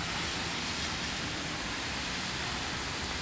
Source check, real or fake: real